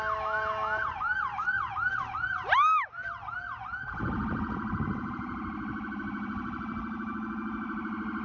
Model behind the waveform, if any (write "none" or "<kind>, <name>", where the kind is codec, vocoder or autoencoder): none